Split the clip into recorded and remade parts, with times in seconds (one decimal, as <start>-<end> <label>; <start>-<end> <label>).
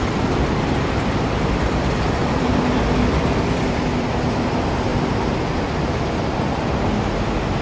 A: 0.0-7.6 recorded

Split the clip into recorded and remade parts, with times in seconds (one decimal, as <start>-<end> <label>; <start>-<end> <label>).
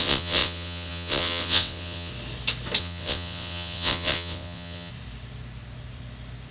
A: 0.0-2.1 remade; 2.1-2.8 recorded; 2.8-4.9 remade; 4.9-6.5 recorded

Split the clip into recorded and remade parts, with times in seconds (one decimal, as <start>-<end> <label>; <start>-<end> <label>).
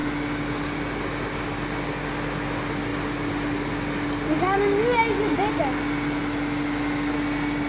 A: 0.0-7.7 recorded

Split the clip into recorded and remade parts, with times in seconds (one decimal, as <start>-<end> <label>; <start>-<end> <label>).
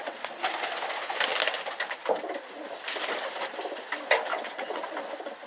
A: 0.0-4.3 recorded; 4.3-4.8 remade; 4.8-5.5 recorded